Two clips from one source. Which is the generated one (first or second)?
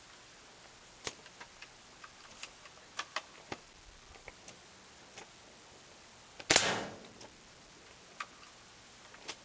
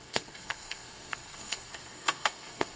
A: second